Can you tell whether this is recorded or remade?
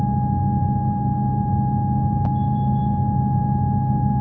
recorded